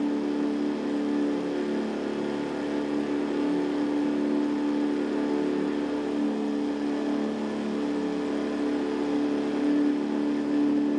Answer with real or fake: real